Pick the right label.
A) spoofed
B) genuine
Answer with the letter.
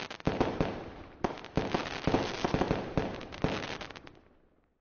B